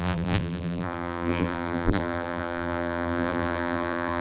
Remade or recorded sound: remade